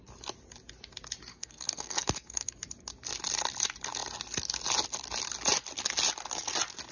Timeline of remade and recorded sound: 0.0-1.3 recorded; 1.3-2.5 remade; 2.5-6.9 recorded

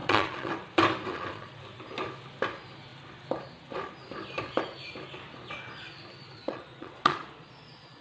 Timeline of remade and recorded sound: 0.0-0.5 remade; 0.5-1.1 recorded; 1.1-1.6 remade; 1.6-6.4 recorded; 6.4-8.0 remade

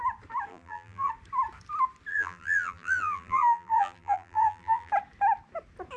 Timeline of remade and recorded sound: 0.0-0.5 recorded; 0.5-1.1 remade; 1.1-2.1 recorded; 2.1-4.9 remade; 4.9-6.0 recorded

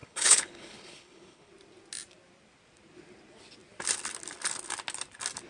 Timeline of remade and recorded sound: 0.0-1.5 remade; 1.5-5.5 recorded

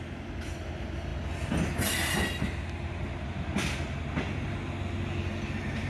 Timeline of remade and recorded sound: 0.0-5.9 recorded

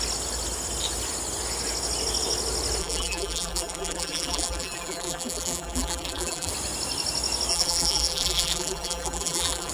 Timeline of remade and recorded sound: 0.0-2.8 recorded; 2.8-6.5 remade; 6.5-7.5 recorded; 7.5-9.7 remade

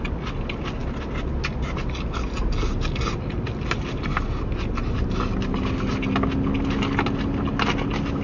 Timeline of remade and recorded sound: 0.0-8.2 recorded

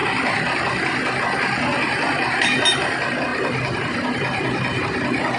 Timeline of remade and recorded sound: 0.0-3.3 recorded; 3.3-5.4 remade